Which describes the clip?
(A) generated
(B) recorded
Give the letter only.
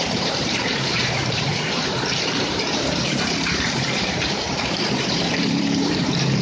A